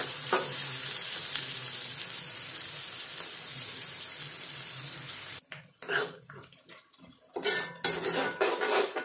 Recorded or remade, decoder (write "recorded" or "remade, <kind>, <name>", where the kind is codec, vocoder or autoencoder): recorded